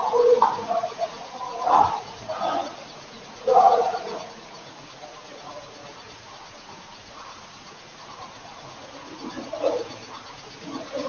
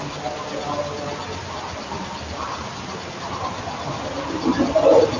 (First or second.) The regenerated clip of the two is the first